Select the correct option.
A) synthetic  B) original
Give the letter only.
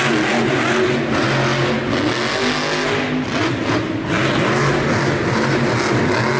B